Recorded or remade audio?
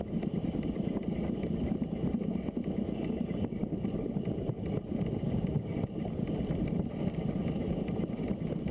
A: recorded